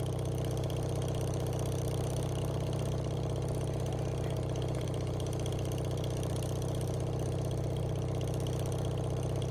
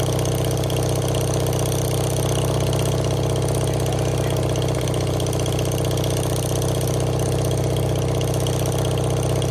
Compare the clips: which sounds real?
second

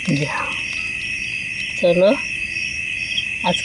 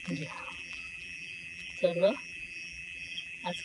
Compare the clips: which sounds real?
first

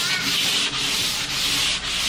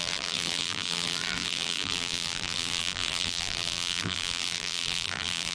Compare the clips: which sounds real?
first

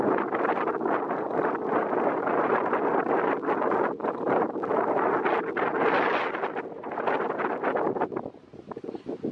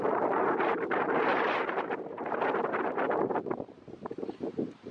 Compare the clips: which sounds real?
first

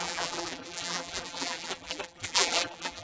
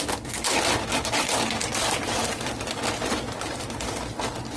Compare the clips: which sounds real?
second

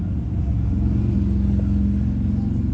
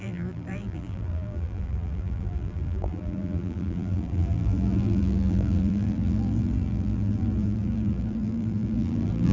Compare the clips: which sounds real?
first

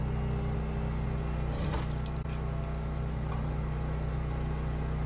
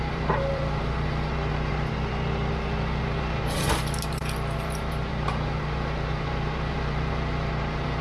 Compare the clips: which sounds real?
first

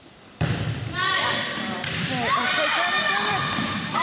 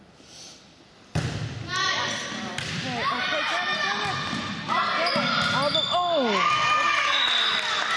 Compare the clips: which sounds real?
second